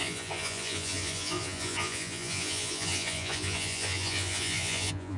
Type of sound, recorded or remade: remade